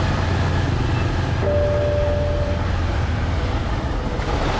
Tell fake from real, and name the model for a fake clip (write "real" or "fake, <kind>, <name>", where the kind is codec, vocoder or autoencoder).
real